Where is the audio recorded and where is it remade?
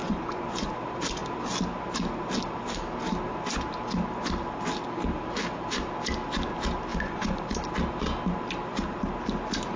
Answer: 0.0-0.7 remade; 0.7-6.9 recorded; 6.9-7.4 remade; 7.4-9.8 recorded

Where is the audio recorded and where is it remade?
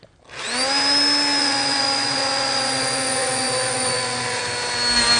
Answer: 0.0-1.4 recorded; 1.4-4.4 remade; 4.4-5.2 recorded